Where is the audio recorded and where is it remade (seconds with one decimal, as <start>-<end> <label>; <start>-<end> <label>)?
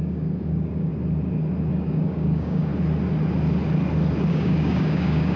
0.0-0.9 remade; 0.9-1.7 recorded; 1.7-2.7 remade; 2.7-4.3 recorded; 4.3-5.4 remade